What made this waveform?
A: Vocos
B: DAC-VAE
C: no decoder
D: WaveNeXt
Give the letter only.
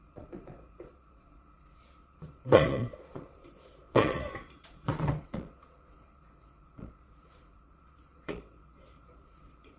A